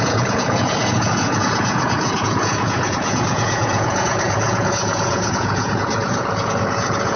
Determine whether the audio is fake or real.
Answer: fake